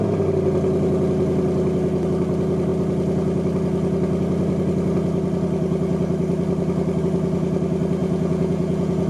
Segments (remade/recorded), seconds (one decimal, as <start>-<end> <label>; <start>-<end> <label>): 0.0-8.0 recorded; 8.0-9.1 remade